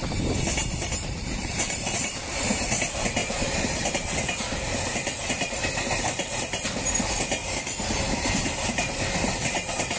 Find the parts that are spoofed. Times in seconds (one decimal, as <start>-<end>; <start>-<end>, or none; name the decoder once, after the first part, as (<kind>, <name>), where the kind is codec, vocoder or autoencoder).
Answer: 0.6-2.6 (vocoder, BigVGAN v2); 3.2-3.9